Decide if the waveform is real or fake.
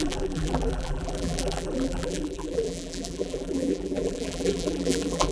fake